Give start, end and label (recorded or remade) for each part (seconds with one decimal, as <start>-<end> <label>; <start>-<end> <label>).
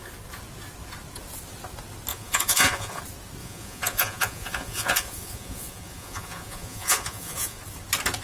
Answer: 0.0-2.1 recorded; 2.1-3.0 remade; 3.0-3.4 recorded; 3.4-7.6 remade; 7.6-8.2 recorded